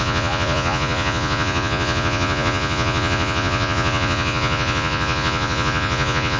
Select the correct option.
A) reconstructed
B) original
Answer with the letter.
A